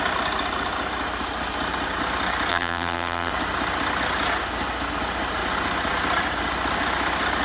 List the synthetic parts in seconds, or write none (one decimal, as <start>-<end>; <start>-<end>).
2.5-3.3